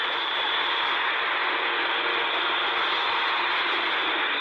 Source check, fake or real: real